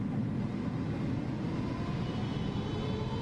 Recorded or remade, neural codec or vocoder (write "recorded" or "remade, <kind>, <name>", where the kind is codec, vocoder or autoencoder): recorded